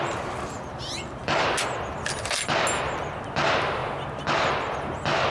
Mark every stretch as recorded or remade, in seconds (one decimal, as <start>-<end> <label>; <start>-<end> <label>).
0.0-5.3 recorded